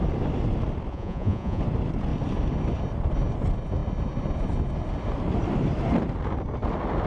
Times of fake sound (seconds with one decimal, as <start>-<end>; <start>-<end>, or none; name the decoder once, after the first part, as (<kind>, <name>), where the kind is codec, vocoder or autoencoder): 0.9-1.6 (vocoder, Vocos)